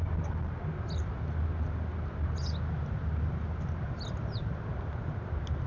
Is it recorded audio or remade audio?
recorded